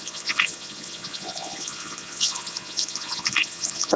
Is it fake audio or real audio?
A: fake